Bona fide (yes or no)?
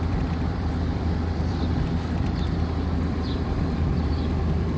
no